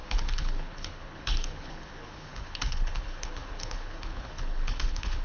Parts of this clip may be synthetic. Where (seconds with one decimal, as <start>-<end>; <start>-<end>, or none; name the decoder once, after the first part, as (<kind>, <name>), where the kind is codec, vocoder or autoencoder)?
0.0-5.2 (codec, HILCodec)

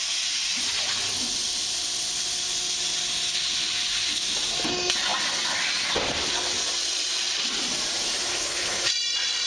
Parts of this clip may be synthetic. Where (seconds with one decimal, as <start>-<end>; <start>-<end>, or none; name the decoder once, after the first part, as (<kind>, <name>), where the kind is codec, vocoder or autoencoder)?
8.3-8.8 (codec, HILCodec)

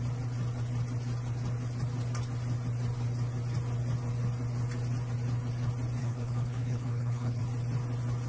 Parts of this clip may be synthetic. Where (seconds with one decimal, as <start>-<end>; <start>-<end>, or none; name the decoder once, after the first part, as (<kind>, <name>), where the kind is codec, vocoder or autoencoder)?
6.0-7.4 (codec, HILCodec)

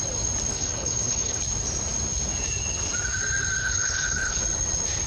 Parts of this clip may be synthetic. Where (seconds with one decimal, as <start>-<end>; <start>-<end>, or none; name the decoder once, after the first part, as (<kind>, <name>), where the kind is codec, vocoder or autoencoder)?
0.5-1.4 (codec, HILCodec); 3.6-4.4